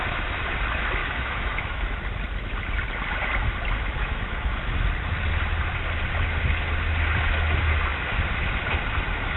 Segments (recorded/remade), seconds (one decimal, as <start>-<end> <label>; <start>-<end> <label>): 0.0-1.0 recorded; 1.0-1.8 remade; 1.8-4.0 recorded; 4.0-4.5 remade; 4.5-9.4 recorded